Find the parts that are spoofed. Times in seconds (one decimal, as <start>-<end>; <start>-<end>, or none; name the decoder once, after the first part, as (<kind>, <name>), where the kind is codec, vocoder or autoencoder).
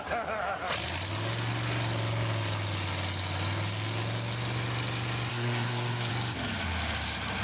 5.3-6.1 (codec, SNAC)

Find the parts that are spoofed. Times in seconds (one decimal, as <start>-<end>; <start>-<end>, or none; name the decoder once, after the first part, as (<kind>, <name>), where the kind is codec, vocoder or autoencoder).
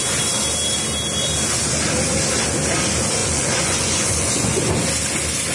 3.2-4.7 (vocoder, Vocos)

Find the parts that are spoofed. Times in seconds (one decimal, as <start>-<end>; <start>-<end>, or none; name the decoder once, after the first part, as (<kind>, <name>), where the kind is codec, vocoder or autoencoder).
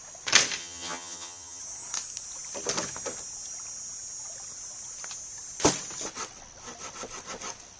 0.6-1.6 (vocoder, HiFi-GAN)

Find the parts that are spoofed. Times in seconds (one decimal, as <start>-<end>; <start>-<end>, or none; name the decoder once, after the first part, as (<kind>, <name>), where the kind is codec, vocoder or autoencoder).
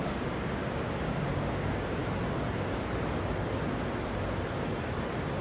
0.0-2.0 (codec, DAC)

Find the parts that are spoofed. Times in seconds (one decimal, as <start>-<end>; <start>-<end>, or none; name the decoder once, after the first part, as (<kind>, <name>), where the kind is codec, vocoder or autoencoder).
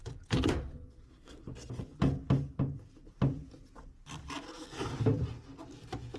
1.1-1.7 (codec, SNAC)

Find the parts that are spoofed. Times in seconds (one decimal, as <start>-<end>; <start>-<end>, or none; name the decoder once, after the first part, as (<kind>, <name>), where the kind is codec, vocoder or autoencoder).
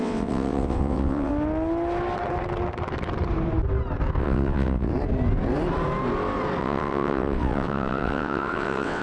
0.0-1.3 (vocoder, WaveNeXt); 4.2-4.9; 6.6-9.0